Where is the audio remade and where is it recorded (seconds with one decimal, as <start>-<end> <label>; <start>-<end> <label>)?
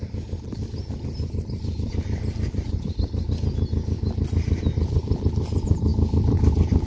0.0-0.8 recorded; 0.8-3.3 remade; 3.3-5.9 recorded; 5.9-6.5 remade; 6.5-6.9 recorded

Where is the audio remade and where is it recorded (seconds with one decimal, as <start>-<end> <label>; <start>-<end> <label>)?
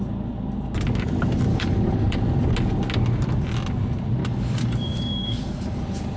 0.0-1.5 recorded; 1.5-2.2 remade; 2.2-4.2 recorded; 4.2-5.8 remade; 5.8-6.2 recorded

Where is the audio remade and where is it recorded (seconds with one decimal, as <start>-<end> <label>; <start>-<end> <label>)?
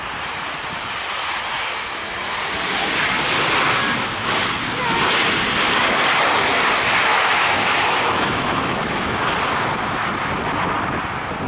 0.0-7.1 recorded; 7.1-9.2 remade; 9.2-11.5 recorded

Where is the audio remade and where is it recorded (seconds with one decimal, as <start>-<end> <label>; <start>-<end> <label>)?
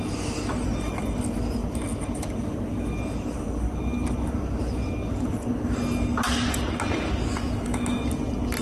0.0-7.3 recorded; 7.3-8.0 remade; 8.0-8.6 recorded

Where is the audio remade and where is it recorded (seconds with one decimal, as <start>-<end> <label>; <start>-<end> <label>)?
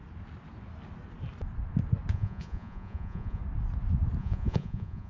0.0-2.1 recorded; 2.1-3.4 remade; 3.4-4.2 recorded; 4.2-5.1 remade